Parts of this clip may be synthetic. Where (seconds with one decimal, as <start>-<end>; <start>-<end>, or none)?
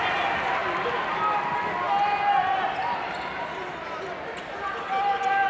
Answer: none